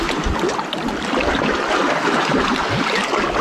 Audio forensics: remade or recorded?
recorded